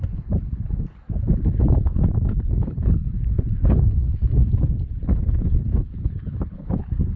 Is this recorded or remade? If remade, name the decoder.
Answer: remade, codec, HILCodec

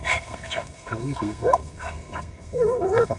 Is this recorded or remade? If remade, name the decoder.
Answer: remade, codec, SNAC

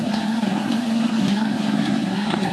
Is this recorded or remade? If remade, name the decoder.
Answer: remade, codec, SNAC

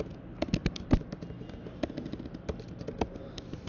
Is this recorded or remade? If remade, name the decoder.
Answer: recorded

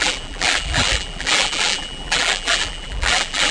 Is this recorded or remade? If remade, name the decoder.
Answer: remade, vocoder, BigVGAN v2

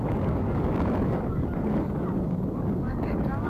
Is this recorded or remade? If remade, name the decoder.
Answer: remade, codec, DAC